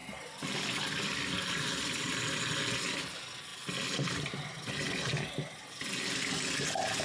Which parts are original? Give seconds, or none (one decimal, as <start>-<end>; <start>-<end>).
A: 0.0-7.0